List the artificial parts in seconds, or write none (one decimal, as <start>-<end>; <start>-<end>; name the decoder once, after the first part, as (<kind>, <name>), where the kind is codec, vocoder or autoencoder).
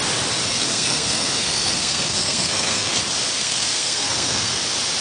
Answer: 0.5-3.0 (codec, SNAC); 3.4-4.6